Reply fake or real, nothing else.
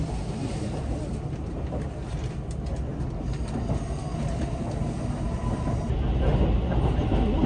real